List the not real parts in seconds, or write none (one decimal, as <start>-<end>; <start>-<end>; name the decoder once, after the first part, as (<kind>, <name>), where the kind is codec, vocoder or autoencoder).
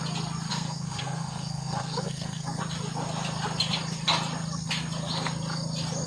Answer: 0.5-2.6 (codec, SNAC)